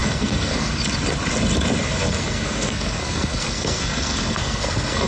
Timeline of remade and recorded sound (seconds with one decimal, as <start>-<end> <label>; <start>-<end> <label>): 0.0-0.7 remade; 0.7-1.8 recorded; 1.8-5.1 remade

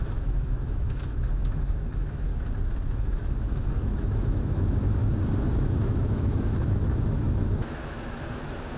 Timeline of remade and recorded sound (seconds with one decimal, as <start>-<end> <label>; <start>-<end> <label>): 0.0-2.3 remade; 2.3-2.9 recorded; 2.9-5.0 remade; 5.0-5.5 recorded; 5.5-8.8 remade

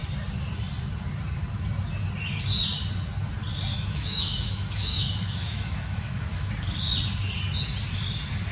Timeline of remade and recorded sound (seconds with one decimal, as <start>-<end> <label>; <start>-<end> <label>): 0.0-3.7 recorded; 3.7-6.5 remade; 6.5-8.5 recorded

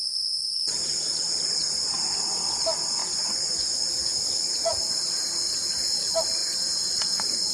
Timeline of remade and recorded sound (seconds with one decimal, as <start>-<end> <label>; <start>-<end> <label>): 0.0-3.0 recorded; 3.0-3.8 remade; 3.8-6.4 recorded; 6.4-7.5 remade

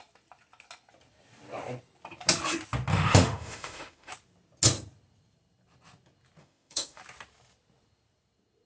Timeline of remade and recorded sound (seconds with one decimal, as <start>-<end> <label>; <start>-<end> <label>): 0.0-2.9 recorded; 2.9-4.1 remade; 4.1-6.4 recorded; 6.4-7.0 remade; 7.0-8.7 recorded